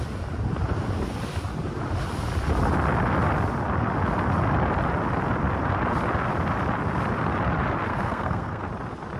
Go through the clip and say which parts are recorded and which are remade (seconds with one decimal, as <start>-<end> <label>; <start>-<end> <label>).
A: 0.0-7.9 recorded; 7.9-8.7 remade; 8.7-9.2 recorded